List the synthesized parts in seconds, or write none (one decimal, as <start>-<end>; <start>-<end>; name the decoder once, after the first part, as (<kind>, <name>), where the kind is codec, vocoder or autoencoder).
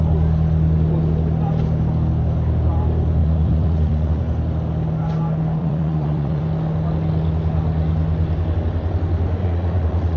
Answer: 3.2-4.2 (vocoder, Vocos); 5.6-6.4; 9.4-10.2